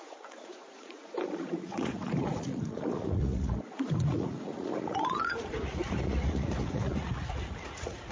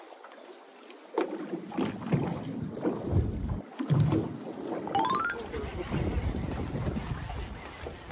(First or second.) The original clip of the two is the second